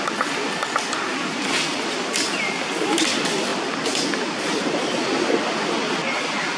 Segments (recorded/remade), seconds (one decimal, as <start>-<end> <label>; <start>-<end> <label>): 0.0-6.6 recorded